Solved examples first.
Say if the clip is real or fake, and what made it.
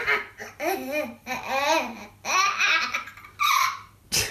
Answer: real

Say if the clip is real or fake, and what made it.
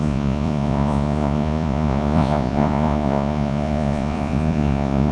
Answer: fake, vocoder, Vocos